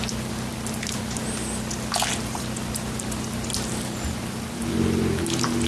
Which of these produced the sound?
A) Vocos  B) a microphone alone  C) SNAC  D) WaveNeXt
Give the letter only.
B